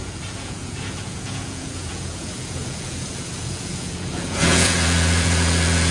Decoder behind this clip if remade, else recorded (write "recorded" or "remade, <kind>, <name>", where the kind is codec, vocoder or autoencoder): remade, vocoder, Vocos